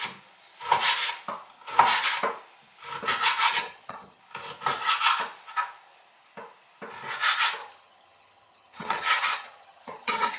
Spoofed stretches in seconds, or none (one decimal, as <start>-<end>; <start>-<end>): 3.6-4.2; 7.6-10.4

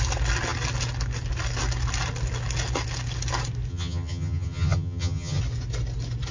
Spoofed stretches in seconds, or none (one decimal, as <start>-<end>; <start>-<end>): 3.7-5.4

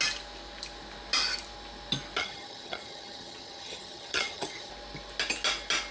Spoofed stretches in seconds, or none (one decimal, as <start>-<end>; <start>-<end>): 2.2-4.7

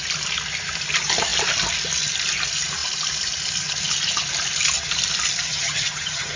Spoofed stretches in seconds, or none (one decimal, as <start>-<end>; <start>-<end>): 5.5-6.4

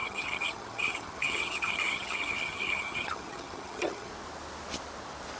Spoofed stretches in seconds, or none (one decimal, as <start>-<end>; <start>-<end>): 0.0-4.1

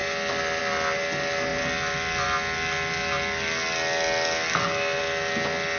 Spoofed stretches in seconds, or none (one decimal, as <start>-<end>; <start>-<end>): none

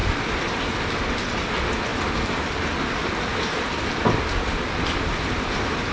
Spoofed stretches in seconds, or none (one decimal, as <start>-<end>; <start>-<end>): none

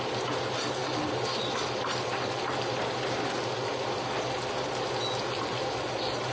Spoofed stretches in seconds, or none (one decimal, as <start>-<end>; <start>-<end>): none